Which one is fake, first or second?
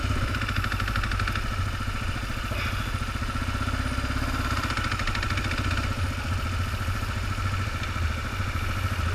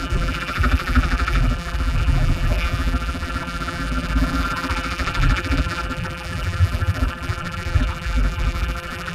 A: second